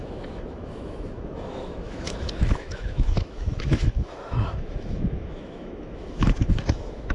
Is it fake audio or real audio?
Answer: fake